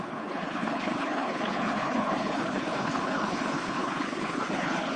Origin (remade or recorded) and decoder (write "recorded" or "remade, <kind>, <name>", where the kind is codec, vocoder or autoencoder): remade, codec, HILCodec